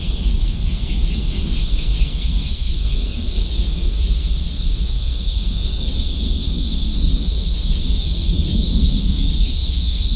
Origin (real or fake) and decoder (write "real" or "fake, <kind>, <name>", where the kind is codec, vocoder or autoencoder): fake, codec, SNAC